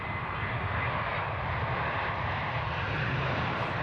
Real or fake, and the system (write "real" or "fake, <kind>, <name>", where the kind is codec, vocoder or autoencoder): real